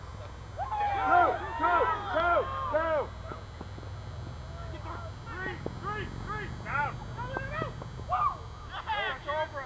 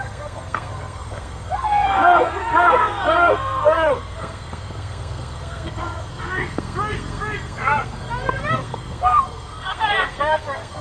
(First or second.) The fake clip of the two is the second